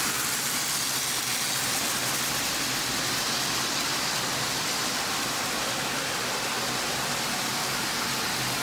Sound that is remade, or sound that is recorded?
recorded